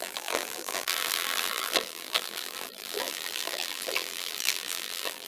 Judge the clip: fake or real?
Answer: fake